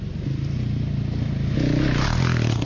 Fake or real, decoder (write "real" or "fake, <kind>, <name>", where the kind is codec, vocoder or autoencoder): real